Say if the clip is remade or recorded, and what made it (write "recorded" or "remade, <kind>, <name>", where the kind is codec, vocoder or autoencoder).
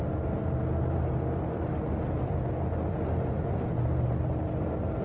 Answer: recorded